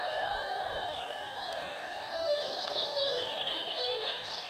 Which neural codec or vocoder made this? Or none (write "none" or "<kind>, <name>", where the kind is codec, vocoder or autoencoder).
codec, DAC